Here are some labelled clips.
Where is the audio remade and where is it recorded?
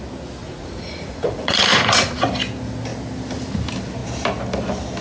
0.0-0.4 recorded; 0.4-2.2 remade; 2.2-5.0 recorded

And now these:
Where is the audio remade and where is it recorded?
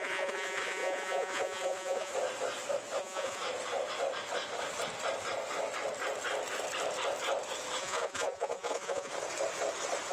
0.0-2.1 remade; 2.1-3.0 recorded; 3.0-3.4 remade; 3.4-7.8 recorded; 7.8-9.1 remade; 9.1-10.1 recorded